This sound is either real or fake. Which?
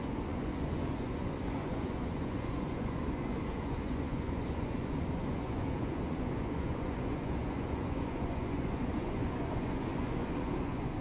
fake